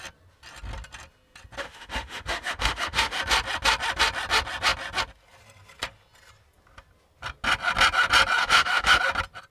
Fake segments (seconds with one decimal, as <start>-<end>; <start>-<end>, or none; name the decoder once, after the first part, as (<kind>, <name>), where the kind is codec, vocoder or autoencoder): 1.6-3.2 (autoencoder, DAC-VAE); 8.4-9.0